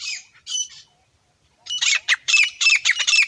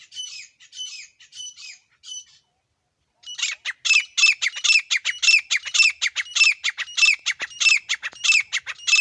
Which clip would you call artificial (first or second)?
first